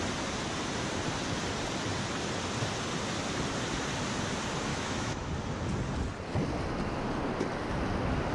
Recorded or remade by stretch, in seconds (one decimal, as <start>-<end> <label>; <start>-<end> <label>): 0.0-4.7 recorded; 4.7-5.3 remade; 5.3-8.3 recorded